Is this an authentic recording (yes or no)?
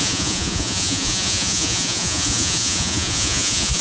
no